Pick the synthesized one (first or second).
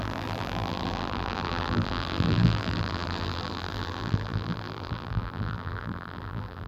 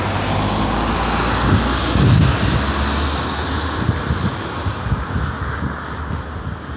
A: first